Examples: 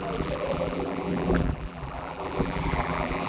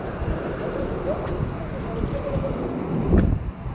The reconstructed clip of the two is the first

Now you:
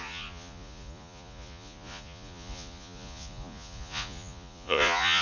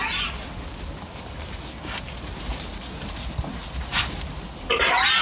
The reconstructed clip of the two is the first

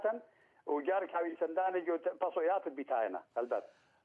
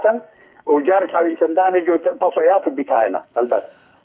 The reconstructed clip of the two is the second